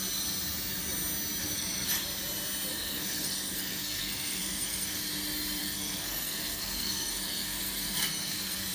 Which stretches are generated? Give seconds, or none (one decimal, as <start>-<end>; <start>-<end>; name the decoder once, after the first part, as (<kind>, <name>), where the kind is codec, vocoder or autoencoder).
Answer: 1.4-1.9 (codec, SNAC); 2.7-5.0; 5.6-8.7